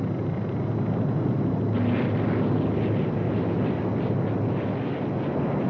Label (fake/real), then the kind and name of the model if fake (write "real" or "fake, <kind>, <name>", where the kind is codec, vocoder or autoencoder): real